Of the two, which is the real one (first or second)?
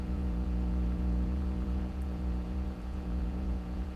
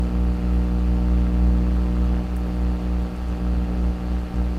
second